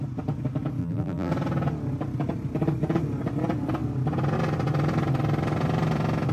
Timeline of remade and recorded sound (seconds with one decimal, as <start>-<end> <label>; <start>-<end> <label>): 0.0-0.8 recorded; 0.8-1.3 remade; 1.3-6.3 recorded